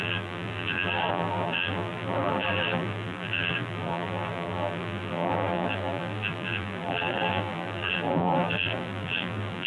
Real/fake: fake